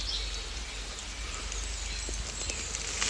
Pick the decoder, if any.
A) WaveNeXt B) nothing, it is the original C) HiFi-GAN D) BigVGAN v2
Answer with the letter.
B